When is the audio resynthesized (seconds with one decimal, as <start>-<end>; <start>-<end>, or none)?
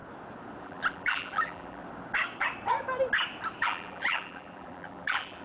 0.6-1.8; 3.6-5.4